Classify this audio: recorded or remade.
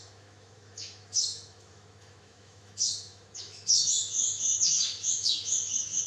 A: remade